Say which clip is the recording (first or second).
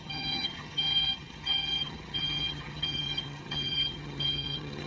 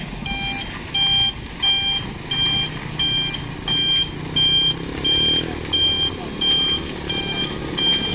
second